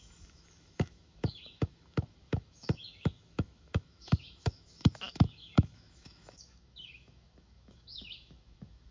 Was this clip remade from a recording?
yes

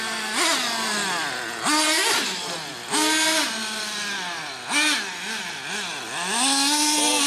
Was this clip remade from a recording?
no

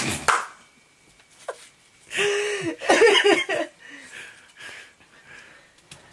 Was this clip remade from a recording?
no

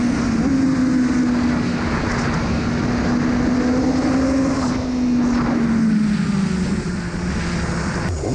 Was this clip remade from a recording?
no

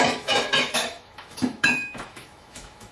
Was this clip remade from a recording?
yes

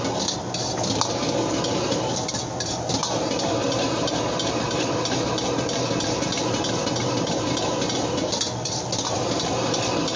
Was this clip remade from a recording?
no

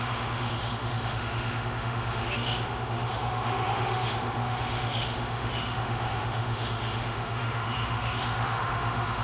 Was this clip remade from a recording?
yes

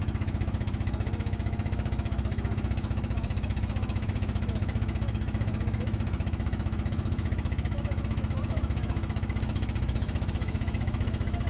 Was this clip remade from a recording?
yes